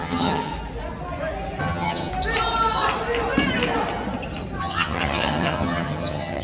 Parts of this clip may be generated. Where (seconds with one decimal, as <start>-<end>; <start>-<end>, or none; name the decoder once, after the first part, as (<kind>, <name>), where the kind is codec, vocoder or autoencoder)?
0.0-0.5 (vocoder, HiFi-GAN); 1.6-2.1; 4.6-6.4